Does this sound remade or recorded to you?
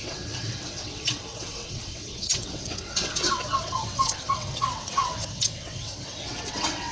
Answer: remade